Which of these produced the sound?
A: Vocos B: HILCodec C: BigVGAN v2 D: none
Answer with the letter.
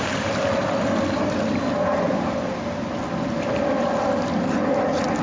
D